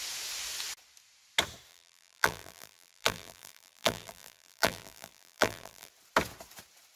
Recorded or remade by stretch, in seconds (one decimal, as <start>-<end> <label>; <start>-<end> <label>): 0.0-1.7 recorded; 1.7-5.9 remade; 5.9-7.0 recorded